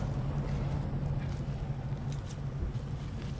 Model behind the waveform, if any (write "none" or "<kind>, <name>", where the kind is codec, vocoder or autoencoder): none